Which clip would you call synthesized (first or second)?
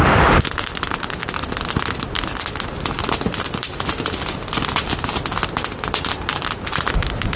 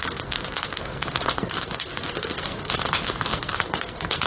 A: second